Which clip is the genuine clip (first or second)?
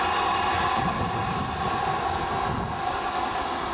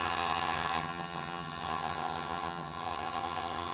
first